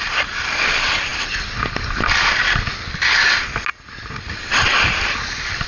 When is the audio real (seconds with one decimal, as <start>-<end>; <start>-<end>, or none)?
0.0-5.7